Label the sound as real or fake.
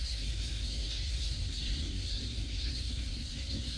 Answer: fake